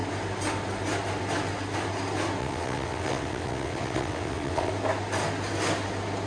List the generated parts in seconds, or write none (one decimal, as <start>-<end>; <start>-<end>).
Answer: 2.4-4.7